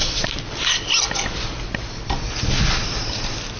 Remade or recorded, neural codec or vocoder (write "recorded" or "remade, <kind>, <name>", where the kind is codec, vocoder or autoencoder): recorded